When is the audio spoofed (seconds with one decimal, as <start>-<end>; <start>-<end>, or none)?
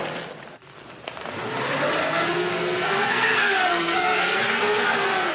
2.0-5.3